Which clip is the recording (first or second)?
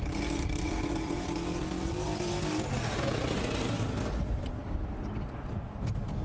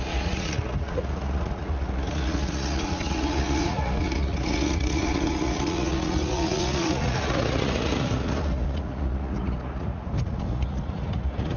first